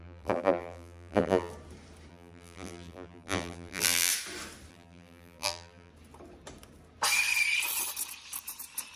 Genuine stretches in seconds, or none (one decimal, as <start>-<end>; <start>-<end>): 1.5-2.1; 4.1-4.7; 5.9-9.0